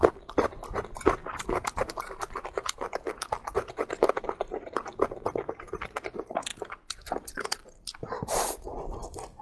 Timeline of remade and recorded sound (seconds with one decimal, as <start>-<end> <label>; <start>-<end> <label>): 0.0-9.4 remade